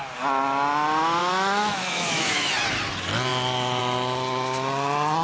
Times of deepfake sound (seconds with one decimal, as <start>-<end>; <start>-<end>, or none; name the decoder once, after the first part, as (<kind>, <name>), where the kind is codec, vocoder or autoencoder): 1.2-2.5 (autoencoder, DAC-VAE)